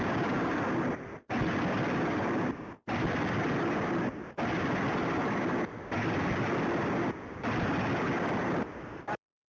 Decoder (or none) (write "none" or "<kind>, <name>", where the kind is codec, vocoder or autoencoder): none